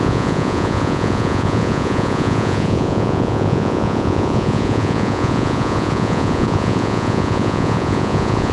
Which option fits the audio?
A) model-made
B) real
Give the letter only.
A